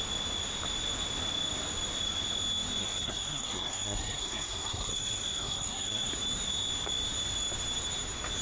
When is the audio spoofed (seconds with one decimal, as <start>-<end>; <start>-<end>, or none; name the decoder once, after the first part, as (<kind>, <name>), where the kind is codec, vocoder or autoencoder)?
2.8-6.1 (codec, SNAC)